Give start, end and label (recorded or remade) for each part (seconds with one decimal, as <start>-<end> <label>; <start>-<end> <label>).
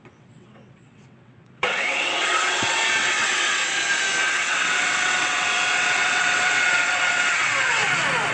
0.0-3.6 remade; 3.6-4.2 recorded; 4.2-7.8 remade; 7.8-8.3 recorded